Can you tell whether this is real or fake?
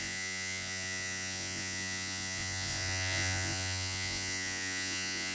fake